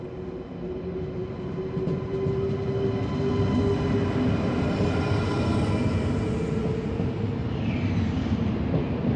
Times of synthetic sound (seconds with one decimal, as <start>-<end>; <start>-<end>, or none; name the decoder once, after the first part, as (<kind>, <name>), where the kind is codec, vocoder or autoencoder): none